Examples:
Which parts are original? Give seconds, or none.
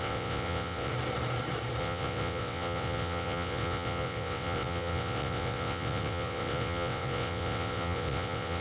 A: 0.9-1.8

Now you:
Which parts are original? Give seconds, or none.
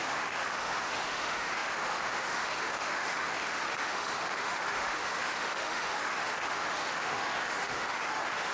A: none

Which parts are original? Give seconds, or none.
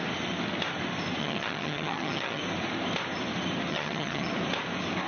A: 0.0-1.2; 2.4-3.7; 4.3-5.1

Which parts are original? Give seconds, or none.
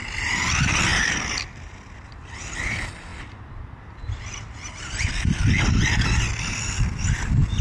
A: 0.0-7.6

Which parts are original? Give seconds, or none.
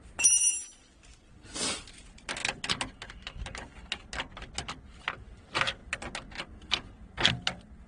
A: 0.0-7.9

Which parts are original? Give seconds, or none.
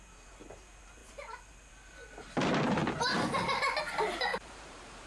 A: 0.0-4.3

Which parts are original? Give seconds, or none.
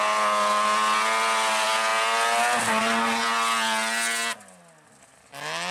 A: 0.0-5.7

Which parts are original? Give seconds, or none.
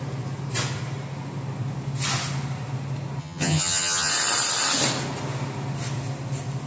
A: 0.0-3.2; 4.1-6.7